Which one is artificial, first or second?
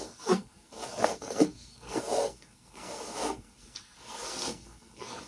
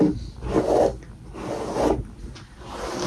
first